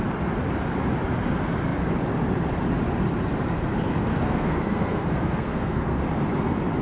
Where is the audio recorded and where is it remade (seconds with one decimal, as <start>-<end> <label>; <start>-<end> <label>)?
0.0-4.1 recorded; 4.1-6.0 remade; 6.0-6.8 recorded